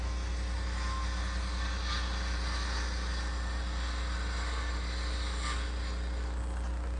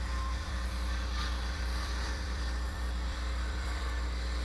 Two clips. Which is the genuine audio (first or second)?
first